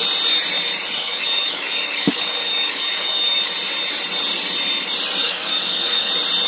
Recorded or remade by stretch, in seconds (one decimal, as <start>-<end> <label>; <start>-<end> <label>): 0.0-1.0 recorded; 1.0-3.5 remade; 3.5-5.2 recorded; 5.2-6.1 remade; 6.1-6.5 recorded